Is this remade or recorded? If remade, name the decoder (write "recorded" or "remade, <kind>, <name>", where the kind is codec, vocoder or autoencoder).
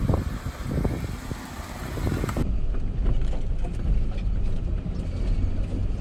recorded